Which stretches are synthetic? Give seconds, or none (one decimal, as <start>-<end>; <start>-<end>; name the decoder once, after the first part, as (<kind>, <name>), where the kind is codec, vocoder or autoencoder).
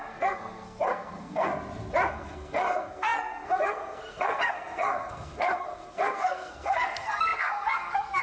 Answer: 0.0-1.5 (codec, SNAC); 2.1-8.2